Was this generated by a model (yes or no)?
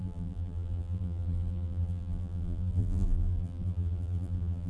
yes